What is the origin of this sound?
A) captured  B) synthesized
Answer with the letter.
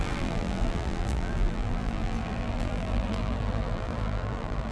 B